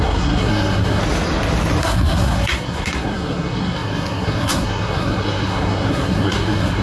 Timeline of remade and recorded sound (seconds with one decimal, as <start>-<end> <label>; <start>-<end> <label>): 0.0-1.0 remade; 1.0-1.8 recorded; 1.8-6.8 remade